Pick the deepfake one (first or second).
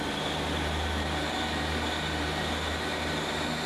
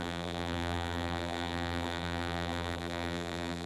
second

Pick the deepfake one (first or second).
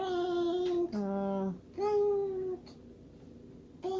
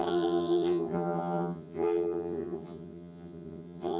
second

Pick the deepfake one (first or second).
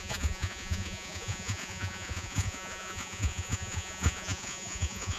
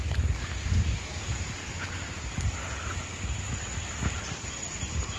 first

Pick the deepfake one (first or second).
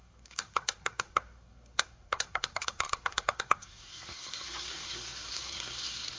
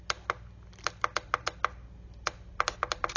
first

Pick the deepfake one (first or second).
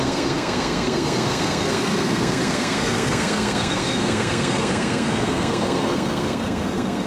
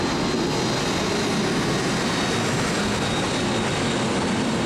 first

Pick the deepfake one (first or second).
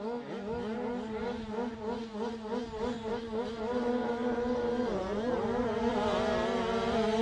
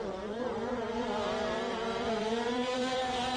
second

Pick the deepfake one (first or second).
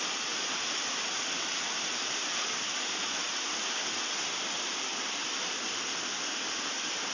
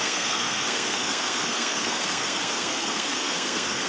second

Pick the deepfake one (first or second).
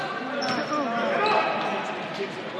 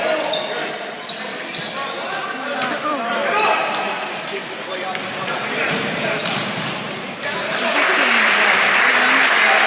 second